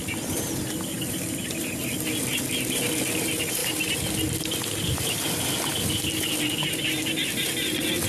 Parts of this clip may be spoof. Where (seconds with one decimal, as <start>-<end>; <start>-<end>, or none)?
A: none